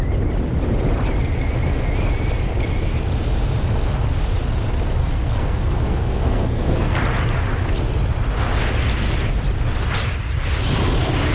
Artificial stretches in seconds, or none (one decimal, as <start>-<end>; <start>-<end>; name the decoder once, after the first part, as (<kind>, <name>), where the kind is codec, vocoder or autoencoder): 5.0-7.0 (codec, SNAC)